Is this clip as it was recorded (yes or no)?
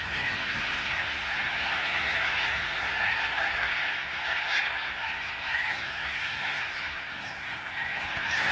no